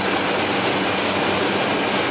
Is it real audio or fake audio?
real